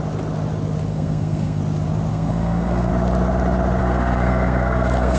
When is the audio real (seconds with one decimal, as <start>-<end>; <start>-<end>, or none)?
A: 0.0-0.9; 1.6-2.1; 2.9-3.8